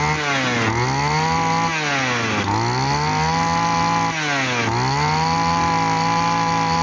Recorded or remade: recorded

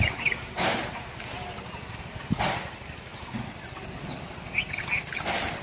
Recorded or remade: recorded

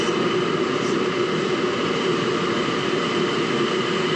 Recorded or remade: recorded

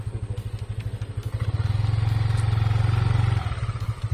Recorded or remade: recorded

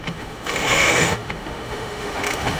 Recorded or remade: remade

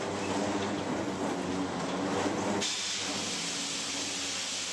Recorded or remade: recorded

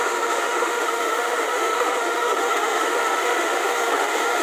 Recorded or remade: remade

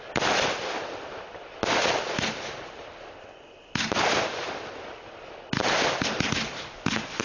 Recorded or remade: recorded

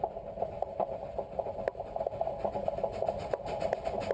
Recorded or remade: recorded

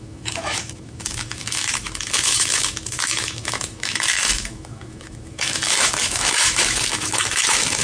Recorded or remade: remade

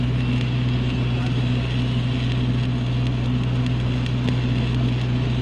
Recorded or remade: recorded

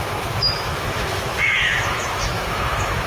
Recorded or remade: remade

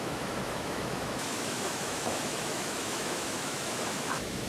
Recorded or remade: remade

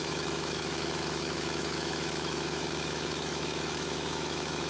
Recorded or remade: remade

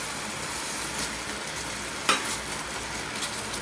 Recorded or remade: recorded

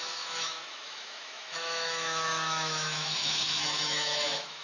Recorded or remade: remade